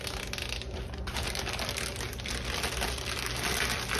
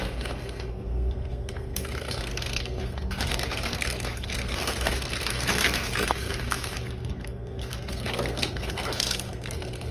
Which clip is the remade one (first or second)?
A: second